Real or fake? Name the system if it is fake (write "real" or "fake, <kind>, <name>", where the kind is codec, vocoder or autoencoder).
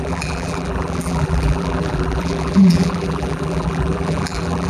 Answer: fake, vocoder, BigVGAN v2